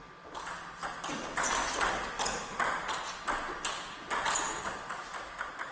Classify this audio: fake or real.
real